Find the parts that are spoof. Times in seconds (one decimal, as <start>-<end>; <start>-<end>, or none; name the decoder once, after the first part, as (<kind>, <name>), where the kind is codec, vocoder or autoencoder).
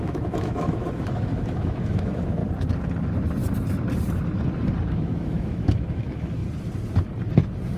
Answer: 0.0-2.4 (autoencoder, DAC-VAE); 4.9-6.4